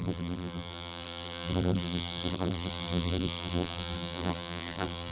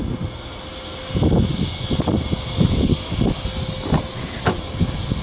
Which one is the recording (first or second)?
second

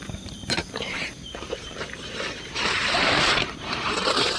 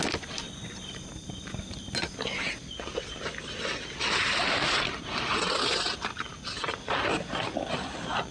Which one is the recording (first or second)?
second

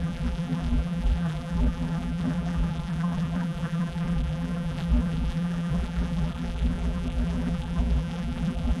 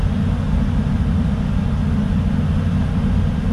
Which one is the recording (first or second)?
second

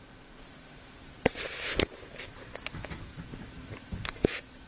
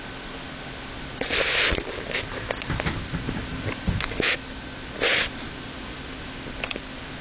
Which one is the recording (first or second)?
second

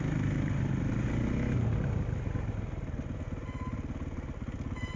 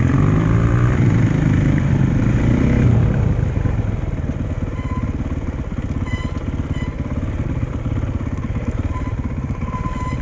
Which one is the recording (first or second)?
first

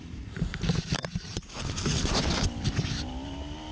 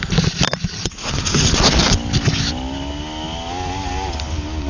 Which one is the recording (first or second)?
second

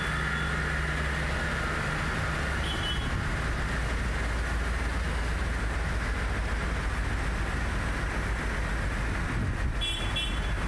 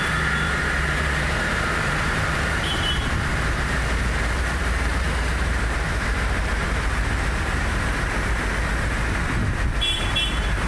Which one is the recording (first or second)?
first